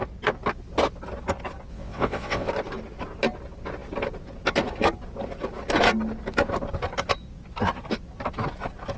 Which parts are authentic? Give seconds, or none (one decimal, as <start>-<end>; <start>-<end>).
0.0-1.7; 2.5-9.0